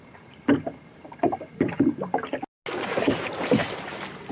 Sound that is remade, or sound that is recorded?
recorded